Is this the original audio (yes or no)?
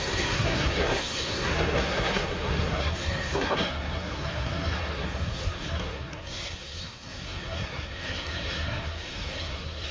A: no